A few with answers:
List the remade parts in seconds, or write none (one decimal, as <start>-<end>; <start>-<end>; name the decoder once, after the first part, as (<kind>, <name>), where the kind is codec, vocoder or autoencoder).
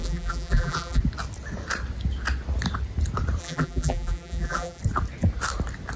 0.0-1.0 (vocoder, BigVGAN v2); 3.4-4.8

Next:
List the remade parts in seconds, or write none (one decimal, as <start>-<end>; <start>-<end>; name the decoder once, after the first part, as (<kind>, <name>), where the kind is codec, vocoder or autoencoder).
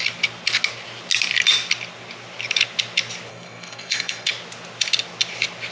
3.3-4.3 (codec, SNAC)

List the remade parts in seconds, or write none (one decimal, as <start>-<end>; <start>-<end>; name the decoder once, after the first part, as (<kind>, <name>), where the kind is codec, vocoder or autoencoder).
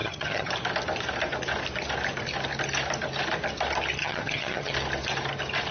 0.0-0.5 (vocoder, HiFi-GAN); 4.0-4.7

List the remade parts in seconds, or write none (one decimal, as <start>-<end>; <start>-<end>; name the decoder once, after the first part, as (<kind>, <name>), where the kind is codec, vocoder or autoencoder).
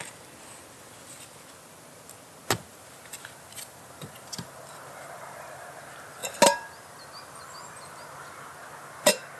2.7-5.8 (vocoder, BigVGAN v2)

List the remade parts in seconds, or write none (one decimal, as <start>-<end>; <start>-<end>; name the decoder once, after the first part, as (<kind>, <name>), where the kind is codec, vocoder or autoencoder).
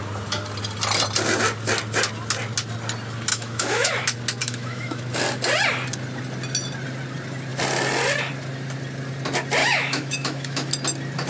3.3-4.0 (autoencoder, DAC-VAE); 4.4-5.0; 9.6-10.7